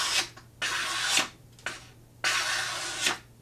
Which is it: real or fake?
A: real